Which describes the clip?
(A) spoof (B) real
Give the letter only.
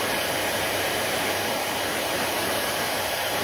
A